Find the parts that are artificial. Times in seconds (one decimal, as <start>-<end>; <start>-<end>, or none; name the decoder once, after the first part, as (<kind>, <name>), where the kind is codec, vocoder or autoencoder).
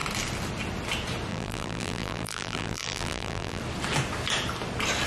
1.3-3.6 (vocoder, BigVGAN v2)